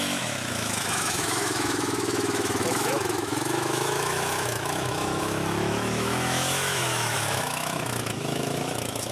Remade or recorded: remade